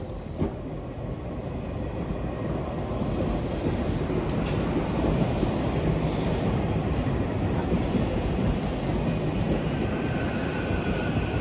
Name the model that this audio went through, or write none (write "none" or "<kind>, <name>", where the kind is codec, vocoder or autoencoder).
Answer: none